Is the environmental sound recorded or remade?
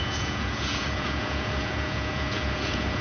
remade